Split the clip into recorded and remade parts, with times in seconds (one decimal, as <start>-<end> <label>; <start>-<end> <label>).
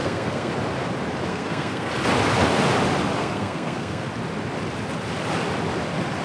0.0-0.5 remade; 0.5-1.3 recorded; 1.3-1.9 remade; 1.9-3.2 recorded; 3.2-4.1 remade; 4.1-6.2 recorded